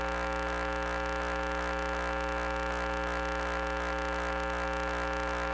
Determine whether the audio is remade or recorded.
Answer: recorded